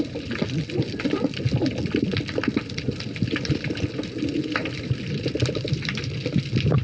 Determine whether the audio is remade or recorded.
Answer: recorded